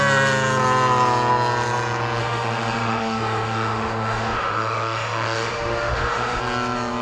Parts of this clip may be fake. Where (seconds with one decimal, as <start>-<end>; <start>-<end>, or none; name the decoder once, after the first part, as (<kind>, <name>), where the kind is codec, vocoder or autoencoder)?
2.2-6.4 (autoencoder, DAC-VAE)